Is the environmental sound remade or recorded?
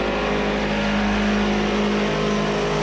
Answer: recorded